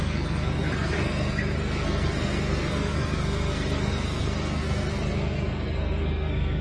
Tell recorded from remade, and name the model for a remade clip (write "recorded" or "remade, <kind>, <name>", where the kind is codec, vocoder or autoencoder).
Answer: remade, codec, SNAC